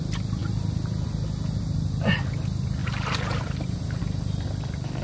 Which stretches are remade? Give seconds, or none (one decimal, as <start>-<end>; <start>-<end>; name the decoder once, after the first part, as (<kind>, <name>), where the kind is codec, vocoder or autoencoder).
2.8-4.0 (vocoder, BigVGAN v2)